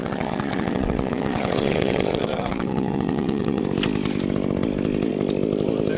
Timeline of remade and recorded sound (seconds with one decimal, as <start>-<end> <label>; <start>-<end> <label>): 0.0-3.6 remade; 3.6-6.0 recorded